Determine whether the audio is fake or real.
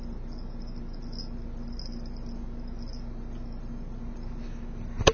real